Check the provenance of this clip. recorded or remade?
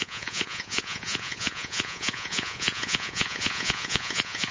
remade